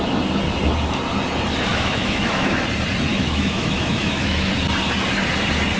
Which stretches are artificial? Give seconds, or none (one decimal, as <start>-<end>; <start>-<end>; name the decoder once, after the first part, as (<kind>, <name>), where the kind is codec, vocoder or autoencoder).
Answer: 1.7-2.6 (autoencoder, DAC-VAE); 3.1-4.5